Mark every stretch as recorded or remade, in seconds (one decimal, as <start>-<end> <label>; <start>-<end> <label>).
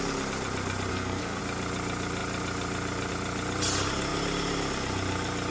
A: 0.0-0.9 recorded; 0.9-1.4 remade; 1.4-5.5 recorded